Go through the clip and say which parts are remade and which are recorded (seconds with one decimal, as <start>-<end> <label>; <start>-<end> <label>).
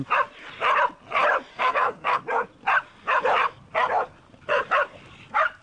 0.0-1.5 recorded; 1.5-2.2 remade; 2.2-5.6 recorded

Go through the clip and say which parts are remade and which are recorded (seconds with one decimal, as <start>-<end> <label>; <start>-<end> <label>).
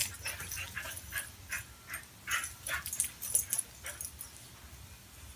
0.0-5.4 recorded